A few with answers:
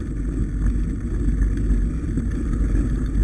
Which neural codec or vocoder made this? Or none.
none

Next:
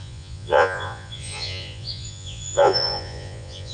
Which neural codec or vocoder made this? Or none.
vocoder, Vocos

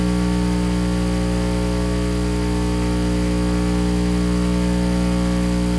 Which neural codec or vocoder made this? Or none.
none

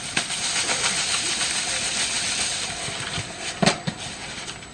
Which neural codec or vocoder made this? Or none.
none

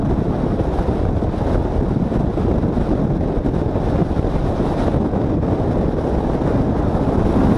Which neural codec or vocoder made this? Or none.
none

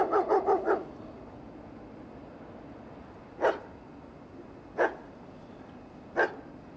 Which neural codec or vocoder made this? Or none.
none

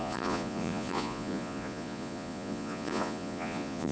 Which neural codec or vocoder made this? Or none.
vocoder, Vocos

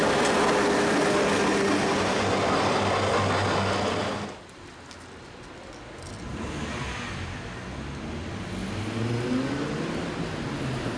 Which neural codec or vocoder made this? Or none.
none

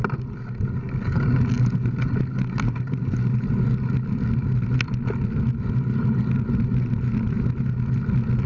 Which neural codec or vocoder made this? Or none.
none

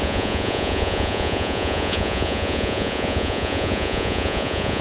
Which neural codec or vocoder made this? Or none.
vocoder, Vocos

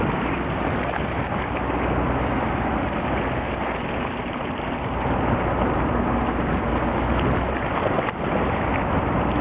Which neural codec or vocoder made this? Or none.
none